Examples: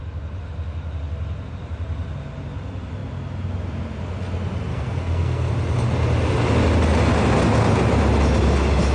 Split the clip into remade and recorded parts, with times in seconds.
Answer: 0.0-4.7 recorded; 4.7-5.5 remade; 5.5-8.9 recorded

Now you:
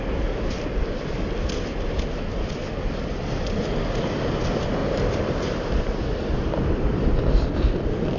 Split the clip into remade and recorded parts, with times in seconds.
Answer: 0.0-4.8 recorded; 4.8-5.8 remade; 5.8-8.2 recorded

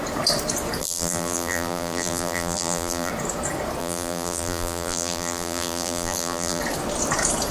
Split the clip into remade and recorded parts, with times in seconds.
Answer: 0.0-0.8 recorded; 0.8-3.1 remade; 3.1-3.8 recorded; 3.8-6.6 remade; 6.6-7.5 recorded

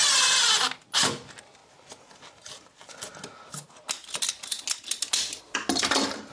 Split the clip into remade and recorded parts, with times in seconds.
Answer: 0.0-6.3 recorded